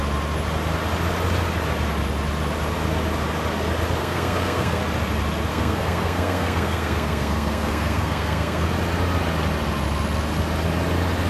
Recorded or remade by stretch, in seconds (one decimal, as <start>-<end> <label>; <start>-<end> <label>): 0.0-4.0 recorded; 4.0-4.8 remade; 4.8-5.5 recorded; 5.5-8.7 remade; 8.7-11.3 recorded